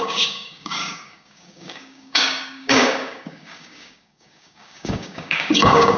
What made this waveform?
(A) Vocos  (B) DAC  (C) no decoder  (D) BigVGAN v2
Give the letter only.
B